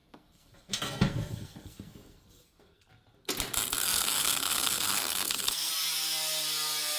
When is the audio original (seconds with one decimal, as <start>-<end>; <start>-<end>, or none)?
2.9-3.8; 5.7-7.0

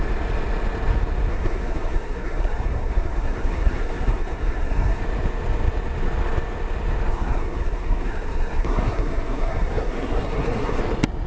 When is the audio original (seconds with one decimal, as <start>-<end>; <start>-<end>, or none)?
0.0-1.3; 5.0-7.1; 10.8-11.3

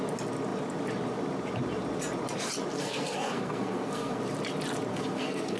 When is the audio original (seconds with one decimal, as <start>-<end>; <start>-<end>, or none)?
0.0-2.8; 4.2-4.9

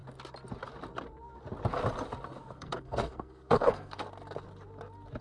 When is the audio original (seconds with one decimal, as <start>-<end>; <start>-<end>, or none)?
0.0-2.4; 4.0-5.2

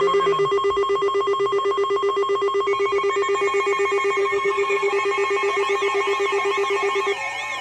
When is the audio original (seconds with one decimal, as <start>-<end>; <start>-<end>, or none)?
0.0-4.2; 4.9-7.6

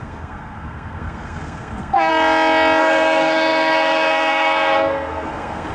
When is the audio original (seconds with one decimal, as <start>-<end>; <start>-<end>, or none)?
2.1-2.8